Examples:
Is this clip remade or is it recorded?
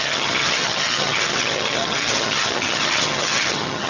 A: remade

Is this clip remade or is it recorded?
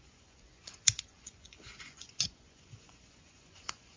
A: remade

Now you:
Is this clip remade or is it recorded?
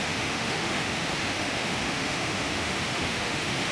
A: remade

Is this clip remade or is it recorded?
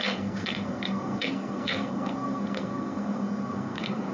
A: remade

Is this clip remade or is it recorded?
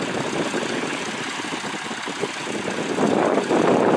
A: recorded